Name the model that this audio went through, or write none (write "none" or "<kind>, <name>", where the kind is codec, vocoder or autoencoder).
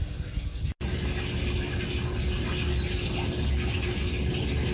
none